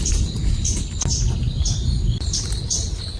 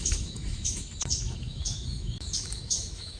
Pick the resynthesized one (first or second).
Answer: second